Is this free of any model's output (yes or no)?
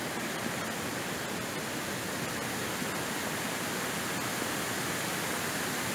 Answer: yes